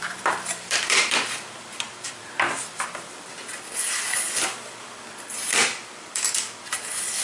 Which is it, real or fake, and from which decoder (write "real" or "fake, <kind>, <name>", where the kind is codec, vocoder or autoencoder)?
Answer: fake, vocoder, BigVGAN v2